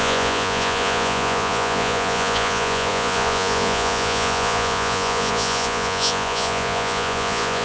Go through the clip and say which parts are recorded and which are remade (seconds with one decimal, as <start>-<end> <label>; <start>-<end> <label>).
0.0-7.6 remade